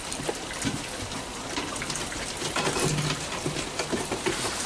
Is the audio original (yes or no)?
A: yes